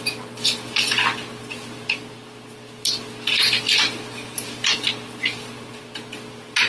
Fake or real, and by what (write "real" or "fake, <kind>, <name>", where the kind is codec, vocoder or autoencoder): real